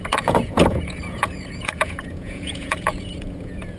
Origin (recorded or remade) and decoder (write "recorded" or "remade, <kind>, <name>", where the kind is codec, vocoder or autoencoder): remade, vocoder, Vocos